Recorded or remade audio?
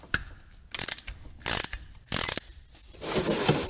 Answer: recorded